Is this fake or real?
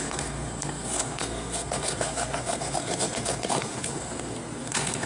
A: fake